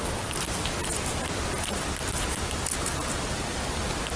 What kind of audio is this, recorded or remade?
recorded